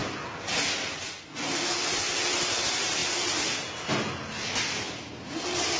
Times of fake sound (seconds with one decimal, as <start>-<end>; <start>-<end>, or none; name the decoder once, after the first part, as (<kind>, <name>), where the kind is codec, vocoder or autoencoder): none